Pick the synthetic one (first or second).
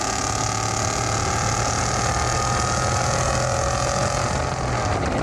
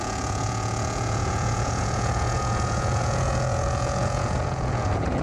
second